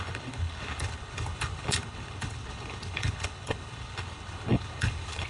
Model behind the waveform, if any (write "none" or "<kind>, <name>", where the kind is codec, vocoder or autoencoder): codec, HILCodec